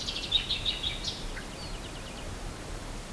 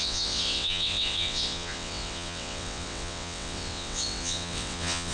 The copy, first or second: second